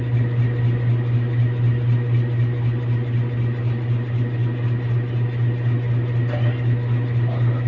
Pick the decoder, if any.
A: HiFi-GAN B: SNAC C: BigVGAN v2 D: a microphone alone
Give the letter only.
D